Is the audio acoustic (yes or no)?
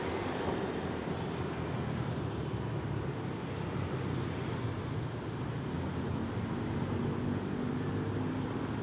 yes